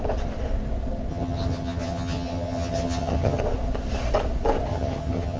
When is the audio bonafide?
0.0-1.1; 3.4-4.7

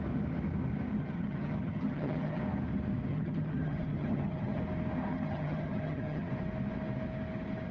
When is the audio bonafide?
0.0-0.9; 2.4-3.1; 4.6-5.1; 6.3-7.7

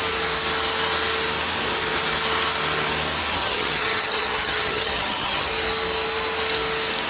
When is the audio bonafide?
0.0-3.4; 5.5-7.1

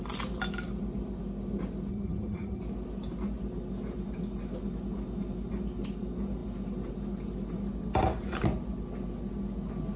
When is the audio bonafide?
0.0-1.9; 2.6-10.0